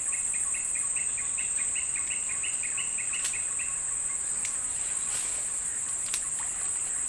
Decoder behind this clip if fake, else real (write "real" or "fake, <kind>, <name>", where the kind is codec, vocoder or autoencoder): real